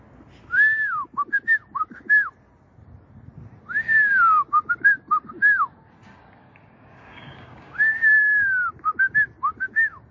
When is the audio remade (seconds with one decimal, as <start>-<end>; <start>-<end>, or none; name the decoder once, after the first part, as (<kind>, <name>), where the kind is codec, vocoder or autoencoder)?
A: 6.4-8.7 (codec, DAC)